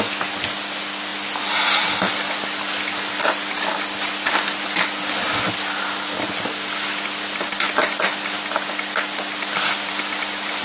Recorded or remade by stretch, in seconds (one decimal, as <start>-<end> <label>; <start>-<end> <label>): 0.0-10.6 recorded